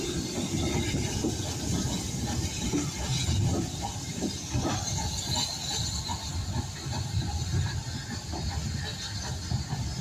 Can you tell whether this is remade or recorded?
recorded